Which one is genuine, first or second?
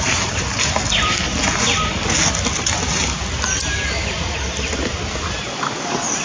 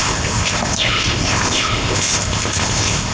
first